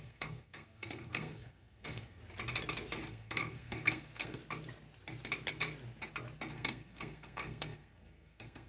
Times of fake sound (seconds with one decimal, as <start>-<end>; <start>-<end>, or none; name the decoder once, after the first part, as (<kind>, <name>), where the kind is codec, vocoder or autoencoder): 0.0-2.2 (codec, SNAC); 3.1-4.4; 6.5-8.7